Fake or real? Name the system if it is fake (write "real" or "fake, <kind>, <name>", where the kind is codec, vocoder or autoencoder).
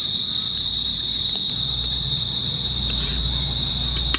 fake, vocoder, BigVGAN v2